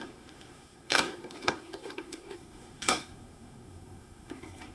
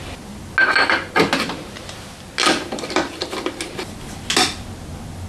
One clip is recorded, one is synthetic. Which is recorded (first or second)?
second